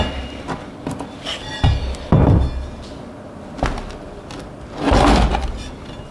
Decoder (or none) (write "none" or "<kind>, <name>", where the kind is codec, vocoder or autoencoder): none